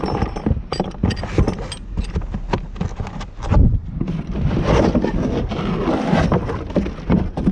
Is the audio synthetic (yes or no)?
no